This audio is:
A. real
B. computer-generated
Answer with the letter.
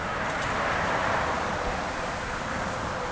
A